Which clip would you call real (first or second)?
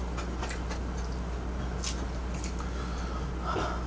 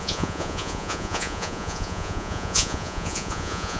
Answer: first